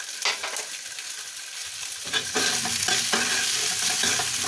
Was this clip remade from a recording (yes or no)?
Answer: no